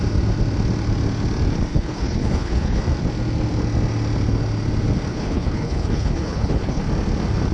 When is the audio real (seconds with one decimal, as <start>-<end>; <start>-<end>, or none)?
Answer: 0.0-1.7; 2.8-5.1; 6.8-7.5